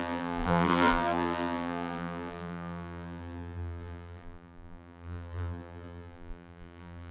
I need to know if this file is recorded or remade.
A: remade